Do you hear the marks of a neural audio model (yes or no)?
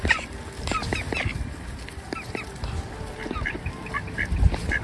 no